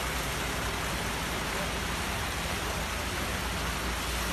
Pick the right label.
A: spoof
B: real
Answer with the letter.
B